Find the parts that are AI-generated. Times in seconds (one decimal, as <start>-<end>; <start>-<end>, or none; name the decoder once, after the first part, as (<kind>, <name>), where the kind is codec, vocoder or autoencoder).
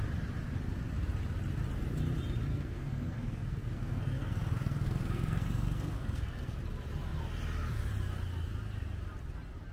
2.5-6.6 (codec, SNAC)